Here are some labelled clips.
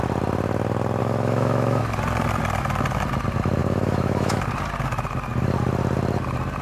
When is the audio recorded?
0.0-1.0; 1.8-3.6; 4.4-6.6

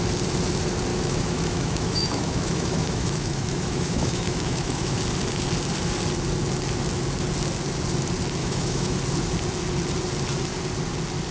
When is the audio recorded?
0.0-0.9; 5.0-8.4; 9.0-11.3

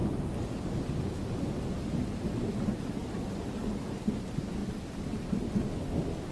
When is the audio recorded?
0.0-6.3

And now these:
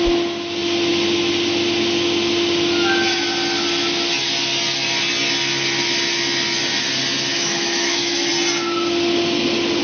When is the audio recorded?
0.0-7.3; 8.3-9.8

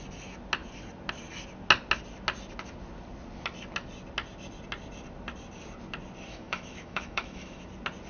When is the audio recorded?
0.0-6.3; 7.6-8.1

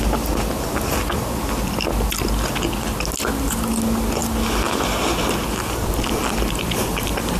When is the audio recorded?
0.0-7.4